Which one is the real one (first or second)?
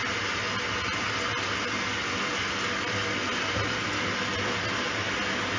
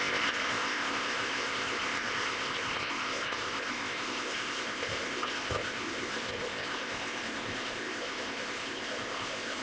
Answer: first